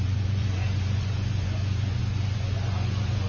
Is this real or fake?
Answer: fake